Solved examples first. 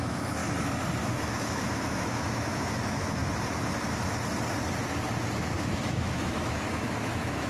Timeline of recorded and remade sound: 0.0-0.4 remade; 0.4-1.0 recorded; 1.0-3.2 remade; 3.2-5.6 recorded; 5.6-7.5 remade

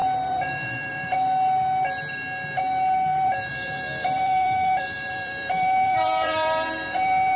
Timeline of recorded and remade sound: 0.0-1.1 remade; 1.1-3.1 recorded; 3.1-7.4 remade

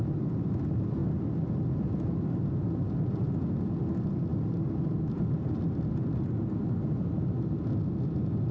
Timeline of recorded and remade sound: 0.0-4.3 recorded; 4.3-5.6 remade; 5.6-8.5 recorded

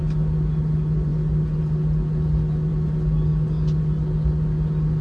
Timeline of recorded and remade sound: 0.0-5.0 recorded